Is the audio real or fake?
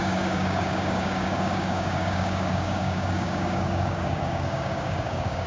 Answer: fake